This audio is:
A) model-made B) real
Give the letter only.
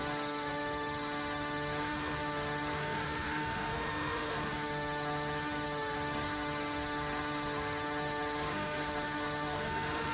A